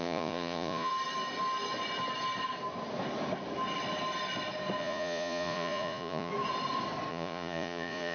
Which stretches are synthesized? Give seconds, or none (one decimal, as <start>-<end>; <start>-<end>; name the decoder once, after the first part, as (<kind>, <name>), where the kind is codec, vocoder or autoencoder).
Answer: 0.0-0.9 (vocoder, Vocos); 4.8-6.3; 7.1-8.1